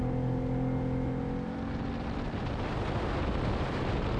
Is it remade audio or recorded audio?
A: recorded